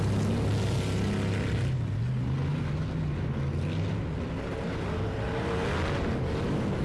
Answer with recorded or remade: recorded